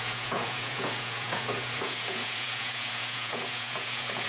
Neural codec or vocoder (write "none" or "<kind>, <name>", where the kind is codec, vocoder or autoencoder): vocoder, Vocos